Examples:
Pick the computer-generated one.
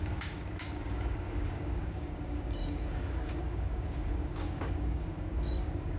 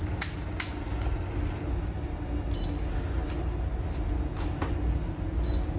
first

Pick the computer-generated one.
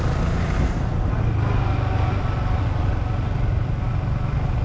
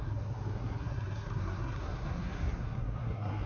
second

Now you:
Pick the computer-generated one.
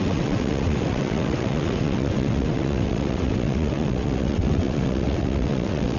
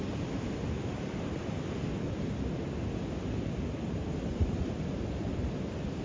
first